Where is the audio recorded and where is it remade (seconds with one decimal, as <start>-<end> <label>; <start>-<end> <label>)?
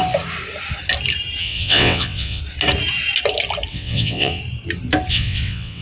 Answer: 0.0-1.4 recorded; 1.4-2.4 remade; 2.4-3.7 recorded; 3.7-4.4 remade; 4.4-5.1 recorded; 5.1-5.8 remade